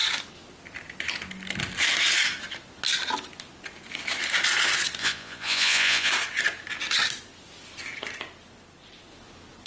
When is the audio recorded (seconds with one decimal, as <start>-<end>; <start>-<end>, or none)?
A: 0.0-5.0; 6.1-9.7